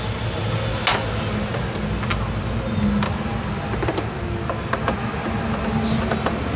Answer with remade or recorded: recorded